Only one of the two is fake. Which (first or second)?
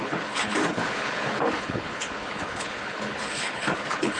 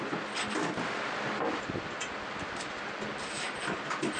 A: first